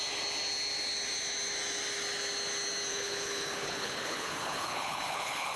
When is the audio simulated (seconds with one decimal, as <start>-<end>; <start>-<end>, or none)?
2.9-5.6

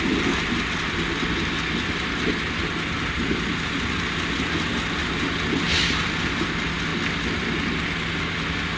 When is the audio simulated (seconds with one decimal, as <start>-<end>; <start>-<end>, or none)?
none

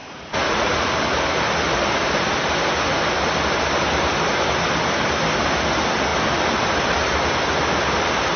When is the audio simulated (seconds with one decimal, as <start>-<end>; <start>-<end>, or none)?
0.0-0.9